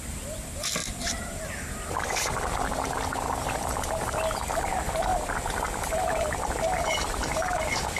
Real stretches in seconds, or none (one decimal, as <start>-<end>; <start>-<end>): 0.0-0.8; 1.5-8.0